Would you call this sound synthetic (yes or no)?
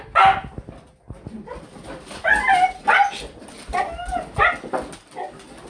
no